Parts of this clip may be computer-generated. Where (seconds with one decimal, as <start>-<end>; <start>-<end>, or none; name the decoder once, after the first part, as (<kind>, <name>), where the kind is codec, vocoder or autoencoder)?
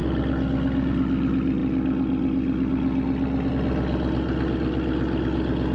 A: none